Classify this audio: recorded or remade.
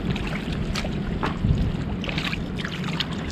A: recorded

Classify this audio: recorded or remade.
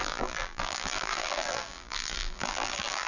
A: remade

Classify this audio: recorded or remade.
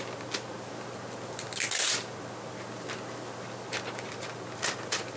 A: recorded